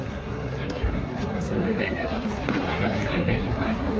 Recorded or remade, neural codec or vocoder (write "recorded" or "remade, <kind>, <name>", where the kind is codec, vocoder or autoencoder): remade, codec, SNAC